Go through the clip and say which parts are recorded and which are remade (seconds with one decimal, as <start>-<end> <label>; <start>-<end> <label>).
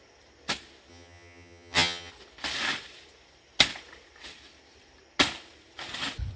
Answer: 0.0-0.9 recorded; 0.9-2.1 remade; 2.1-6.4 recorded